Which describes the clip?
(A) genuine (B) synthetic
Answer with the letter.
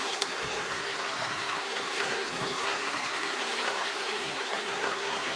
B